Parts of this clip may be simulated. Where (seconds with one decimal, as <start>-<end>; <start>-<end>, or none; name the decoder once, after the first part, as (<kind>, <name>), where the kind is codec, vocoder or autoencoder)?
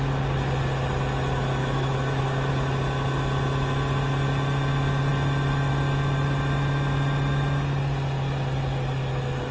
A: 1.6-2.5 (autoencoder, DAC-VAE)